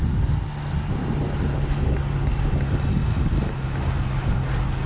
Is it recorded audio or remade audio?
recorded